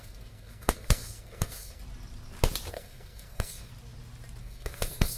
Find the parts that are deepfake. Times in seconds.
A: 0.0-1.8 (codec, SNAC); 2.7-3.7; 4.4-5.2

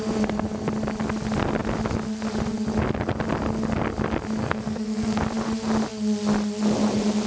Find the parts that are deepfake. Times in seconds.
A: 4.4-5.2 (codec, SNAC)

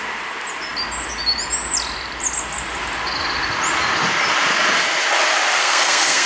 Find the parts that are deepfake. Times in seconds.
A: 5.6-6.3 (codec, SNAC)